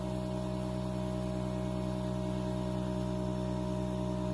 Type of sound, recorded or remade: recorded